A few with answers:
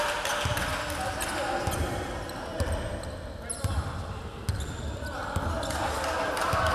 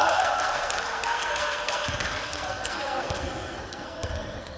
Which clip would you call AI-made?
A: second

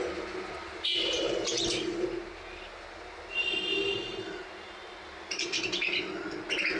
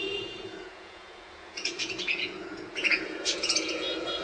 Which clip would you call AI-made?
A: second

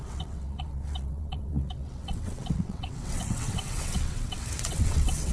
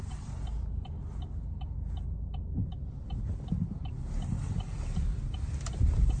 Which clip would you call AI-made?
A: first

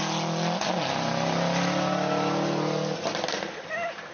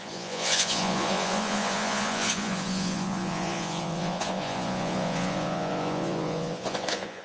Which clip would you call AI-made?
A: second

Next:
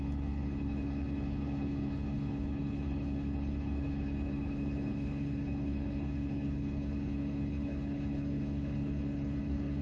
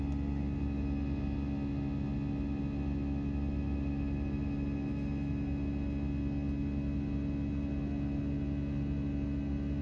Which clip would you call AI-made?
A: first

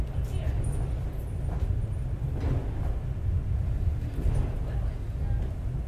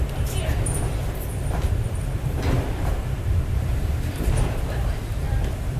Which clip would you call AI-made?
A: second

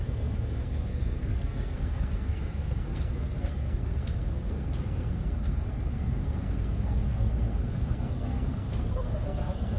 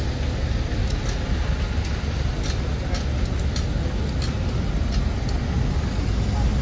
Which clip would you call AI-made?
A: first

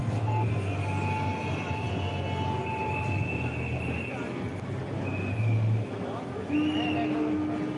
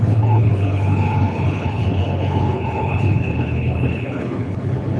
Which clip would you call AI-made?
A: second